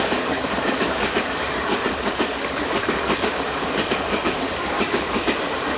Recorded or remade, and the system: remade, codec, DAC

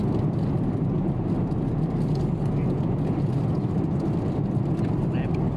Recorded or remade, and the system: recorded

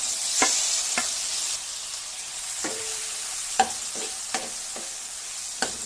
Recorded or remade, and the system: remade, vocoder, BigVGAN v2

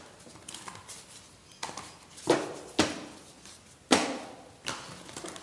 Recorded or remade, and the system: recorded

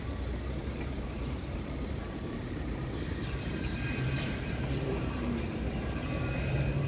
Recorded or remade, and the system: remade, vocoder, BigVGAN v2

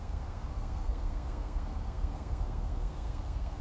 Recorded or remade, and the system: remade, codec, SNAC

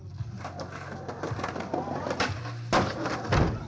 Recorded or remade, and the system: recorded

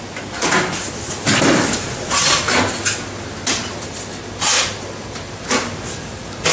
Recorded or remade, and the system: recorded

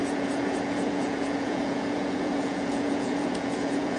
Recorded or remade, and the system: remade, vocoder, Vocos